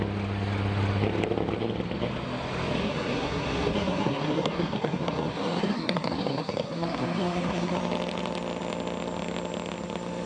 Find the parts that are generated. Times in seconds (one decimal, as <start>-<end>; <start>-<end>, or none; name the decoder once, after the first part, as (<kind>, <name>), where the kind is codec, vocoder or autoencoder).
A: 2.8-7.8 (codec, SNAC)